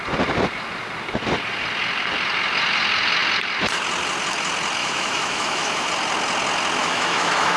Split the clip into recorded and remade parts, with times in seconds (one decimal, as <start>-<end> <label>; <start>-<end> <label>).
0.0-4.8 recorded; 4.8-5.9 remade; 5.9-6.8 recorded; 6.8-7.6 remade